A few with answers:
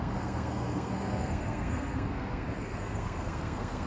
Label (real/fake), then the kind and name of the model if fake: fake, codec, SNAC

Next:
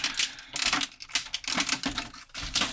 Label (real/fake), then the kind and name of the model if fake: real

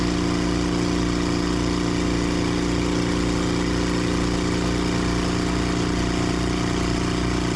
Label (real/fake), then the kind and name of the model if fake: real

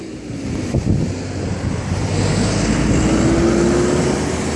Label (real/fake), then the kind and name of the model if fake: real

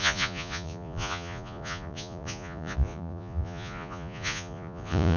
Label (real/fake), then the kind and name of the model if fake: fake, vocoder, Vocos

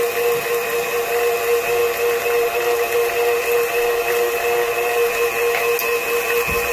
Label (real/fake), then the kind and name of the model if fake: real